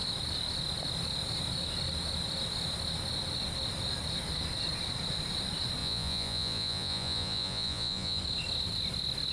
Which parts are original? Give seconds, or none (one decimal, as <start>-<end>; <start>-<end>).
0.0-5.8; 8.2-9.3